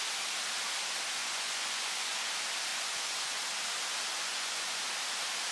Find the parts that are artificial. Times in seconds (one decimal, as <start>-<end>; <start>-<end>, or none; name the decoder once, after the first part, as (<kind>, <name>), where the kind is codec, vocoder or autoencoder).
1.2-2.3 (vocoder, Vocos); 2.7-3.4; 4.1-4.8